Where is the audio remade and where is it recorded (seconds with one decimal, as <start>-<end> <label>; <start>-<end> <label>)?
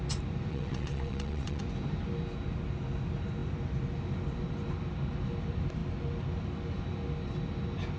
0.0-0.5 recorded; 0.5-1.6 remade; 1.6-8.0 recorded